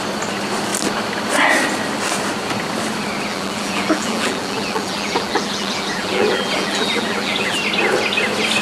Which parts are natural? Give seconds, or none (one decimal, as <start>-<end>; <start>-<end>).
0.0-3.3; 7.6-8.6